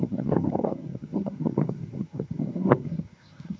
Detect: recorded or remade remade